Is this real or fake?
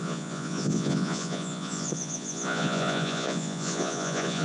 fake